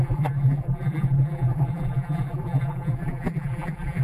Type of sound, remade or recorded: remade